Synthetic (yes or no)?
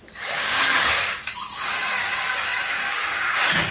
yes